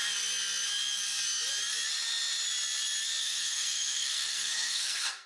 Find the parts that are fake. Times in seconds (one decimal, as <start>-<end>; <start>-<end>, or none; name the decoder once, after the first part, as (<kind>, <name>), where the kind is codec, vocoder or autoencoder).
3.2-5.3 (codec, SNAC)